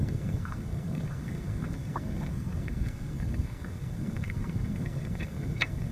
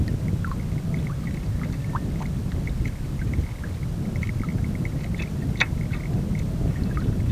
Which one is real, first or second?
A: second